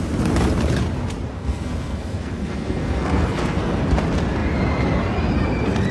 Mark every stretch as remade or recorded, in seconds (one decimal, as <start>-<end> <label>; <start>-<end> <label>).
0.0-1.3 recorded; 1.3-3.8 remade; 3.8-5.9 recorded